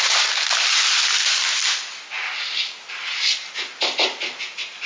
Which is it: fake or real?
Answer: real